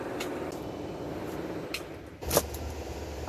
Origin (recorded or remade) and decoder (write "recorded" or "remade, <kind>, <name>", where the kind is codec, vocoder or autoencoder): recorded